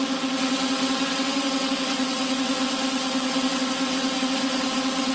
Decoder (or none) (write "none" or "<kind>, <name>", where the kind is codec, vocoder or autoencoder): vocoder, WaveNeXt